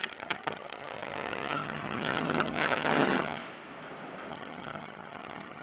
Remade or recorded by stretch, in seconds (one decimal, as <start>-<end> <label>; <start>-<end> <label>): 0.0-3.4 remade; 3.4-4.3 recorded; 4.3-5.6 remade